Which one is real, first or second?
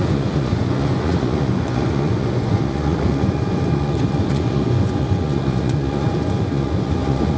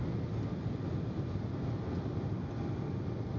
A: second